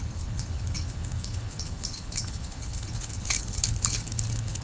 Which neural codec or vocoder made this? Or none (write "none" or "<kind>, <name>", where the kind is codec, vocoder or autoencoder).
codec, HILCodec